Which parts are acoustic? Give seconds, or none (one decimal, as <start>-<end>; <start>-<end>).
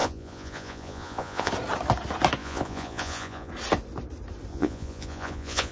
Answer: 1.5-2.4; 3.5-4.5